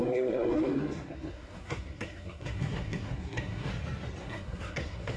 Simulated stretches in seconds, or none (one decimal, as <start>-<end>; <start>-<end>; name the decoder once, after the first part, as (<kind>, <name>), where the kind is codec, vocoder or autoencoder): 0.0-3.7 (codec, SNAC); 4.2-5.2